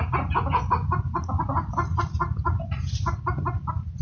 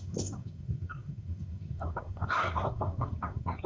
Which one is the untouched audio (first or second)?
first